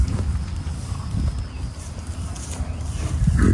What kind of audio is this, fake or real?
fake